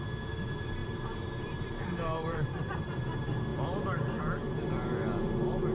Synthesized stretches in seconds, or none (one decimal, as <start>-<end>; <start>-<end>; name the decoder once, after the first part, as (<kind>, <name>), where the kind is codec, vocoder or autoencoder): 0.8-2.6 (vocoder, BigVGAN v2)